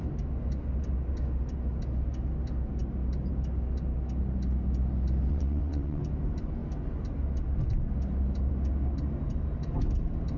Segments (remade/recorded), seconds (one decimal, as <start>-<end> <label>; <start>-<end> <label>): 0.0-5.3 recorded; 5.3-6.0 remade; 6.0-10.4 recorded